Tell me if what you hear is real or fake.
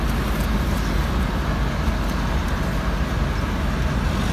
real